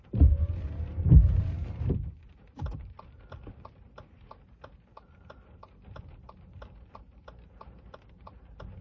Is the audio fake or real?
fake